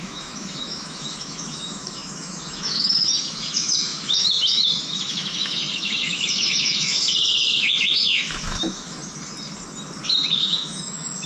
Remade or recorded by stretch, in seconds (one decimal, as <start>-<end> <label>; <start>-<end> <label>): 0.0-9.0 remade; 9.0-10.0 recorded; 10.0-11.3 remade